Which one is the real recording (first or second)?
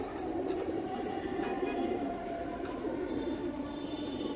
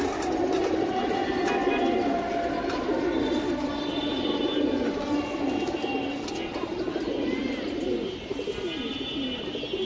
second